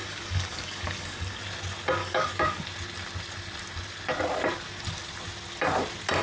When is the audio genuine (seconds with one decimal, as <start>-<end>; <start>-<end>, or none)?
1.4-2.0; 2.6-6.2